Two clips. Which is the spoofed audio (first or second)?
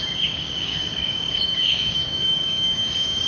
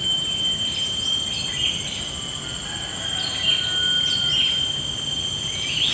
first